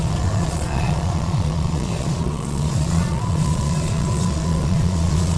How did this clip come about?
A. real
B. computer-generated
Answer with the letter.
B